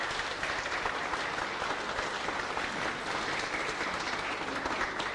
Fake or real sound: real